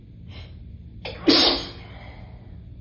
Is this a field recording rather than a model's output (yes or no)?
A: yes